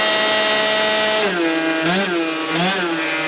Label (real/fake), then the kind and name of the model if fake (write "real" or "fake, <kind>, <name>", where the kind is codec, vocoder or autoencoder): real